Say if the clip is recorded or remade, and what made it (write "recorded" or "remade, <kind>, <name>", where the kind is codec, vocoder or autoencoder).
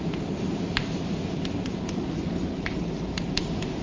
remade, vocoder, BigVGAN v2